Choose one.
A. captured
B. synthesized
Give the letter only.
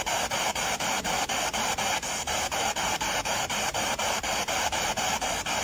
B